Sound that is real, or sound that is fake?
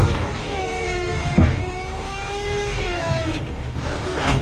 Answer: fake